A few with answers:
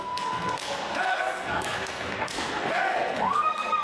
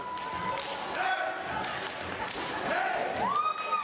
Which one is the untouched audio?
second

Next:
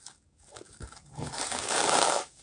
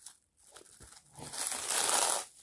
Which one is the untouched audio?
second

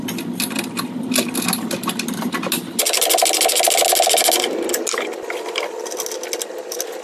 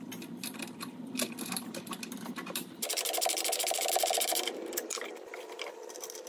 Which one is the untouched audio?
first